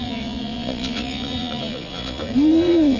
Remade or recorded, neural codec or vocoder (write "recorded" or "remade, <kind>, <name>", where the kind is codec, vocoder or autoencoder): remade, vocoder, Vocos